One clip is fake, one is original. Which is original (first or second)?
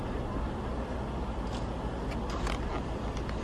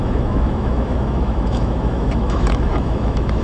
first